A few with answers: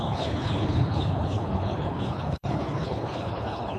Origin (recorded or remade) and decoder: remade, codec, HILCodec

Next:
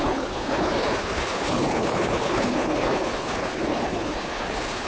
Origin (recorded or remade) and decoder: remade, codec, HILCodec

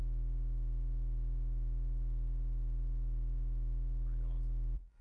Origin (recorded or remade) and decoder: recorded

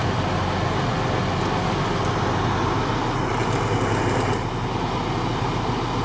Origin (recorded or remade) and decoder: recorded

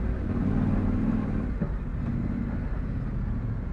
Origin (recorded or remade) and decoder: recorded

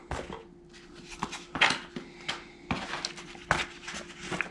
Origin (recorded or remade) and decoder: recorded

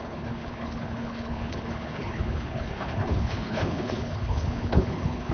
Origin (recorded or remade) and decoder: remade, codec, HILCodec